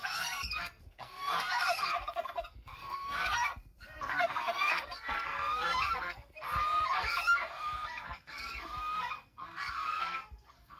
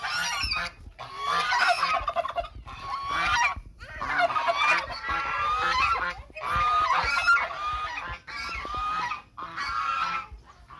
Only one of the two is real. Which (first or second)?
second